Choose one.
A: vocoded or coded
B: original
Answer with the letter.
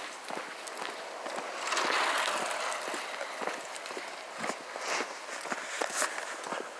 B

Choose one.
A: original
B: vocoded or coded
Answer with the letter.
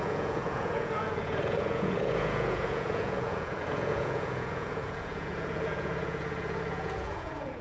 B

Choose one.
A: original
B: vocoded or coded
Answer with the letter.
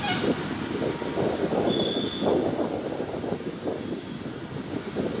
A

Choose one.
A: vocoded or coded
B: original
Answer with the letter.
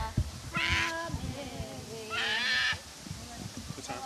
B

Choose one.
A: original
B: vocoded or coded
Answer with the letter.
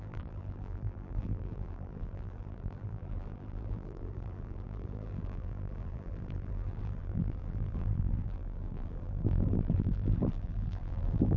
B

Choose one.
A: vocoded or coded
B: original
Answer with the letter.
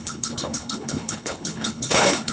A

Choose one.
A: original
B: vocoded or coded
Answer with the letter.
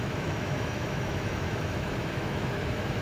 B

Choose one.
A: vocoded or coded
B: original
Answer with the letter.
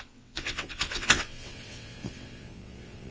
A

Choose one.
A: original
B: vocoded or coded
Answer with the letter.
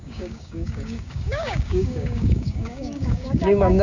B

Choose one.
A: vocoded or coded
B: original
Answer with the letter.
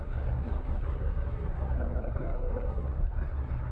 A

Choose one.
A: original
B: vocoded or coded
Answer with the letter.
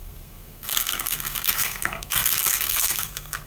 B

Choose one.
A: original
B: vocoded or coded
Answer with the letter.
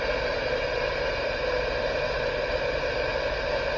A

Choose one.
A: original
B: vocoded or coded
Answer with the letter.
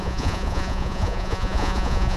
B